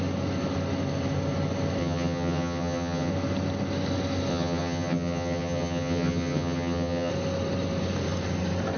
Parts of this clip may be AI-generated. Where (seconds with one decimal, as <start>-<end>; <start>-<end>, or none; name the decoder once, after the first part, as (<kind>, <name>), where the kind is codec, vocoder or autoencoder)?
1.8-3.1 (vocoder, HiFi-GAN); 4.3-7.1